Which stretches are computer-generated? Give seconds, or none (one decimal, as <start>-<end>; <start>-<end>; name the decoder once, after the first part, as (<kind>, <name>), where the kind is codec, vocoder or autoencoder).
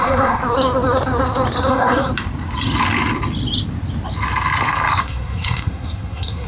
0.0-0.4 (codec, SNAC); 1.7-2.1; 5.0-6.5